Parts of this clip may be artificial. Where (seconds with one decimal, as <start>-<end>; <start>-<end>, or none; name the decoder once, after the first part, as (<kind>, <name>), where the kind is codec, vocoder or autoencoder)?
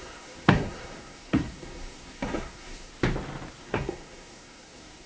0.0-2.9 (codec, SNAC); 3.6-5.1